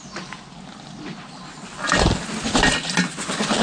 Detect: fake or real real